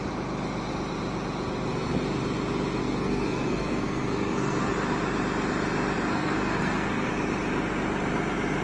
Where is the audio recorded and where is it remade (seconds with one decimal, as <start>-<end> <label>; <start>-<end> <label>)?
0.0-2.8 recorded; 2.8-4.7 remade; 4.7-6.1 recorded; 6.1-7.1 remade; 7.1-8.6 recorded